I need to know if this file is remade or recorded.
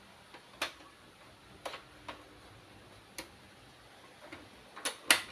recorded